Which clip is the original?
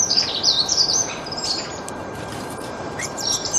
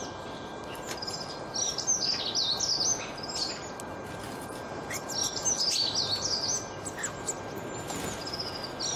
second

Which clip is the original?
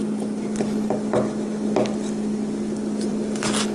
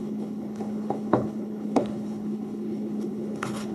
first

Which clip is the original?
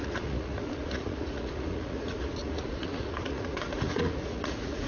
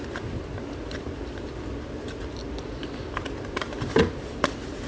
second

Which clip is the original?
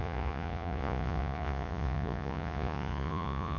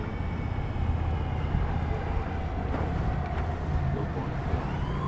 second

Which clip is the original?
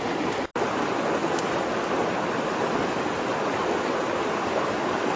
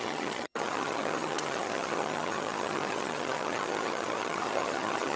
first